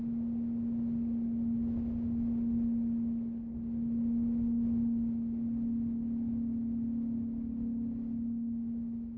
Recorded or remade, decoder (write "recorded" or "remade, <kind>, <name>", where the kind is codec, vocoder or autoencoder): recorded